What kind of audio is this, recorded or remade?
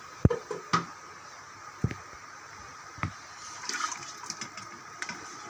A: remade